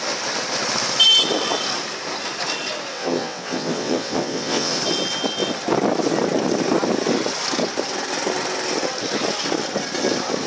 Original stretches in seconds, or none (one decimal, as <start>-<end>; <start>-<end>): 0.0-2.9; 4.8-10.5